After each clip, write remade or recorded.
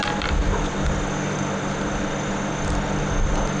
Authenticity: recorded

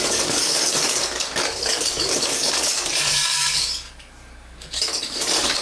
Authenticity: remade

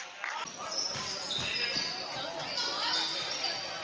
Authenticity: recorded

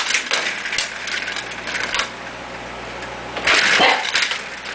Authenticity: recorded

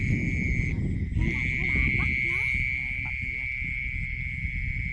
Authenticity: recorded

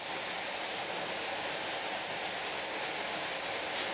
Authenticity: recorded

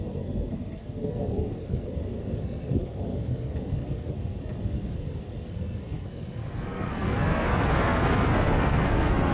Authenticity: remade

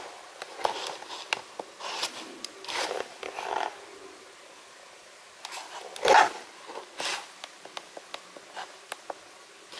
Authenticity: recorded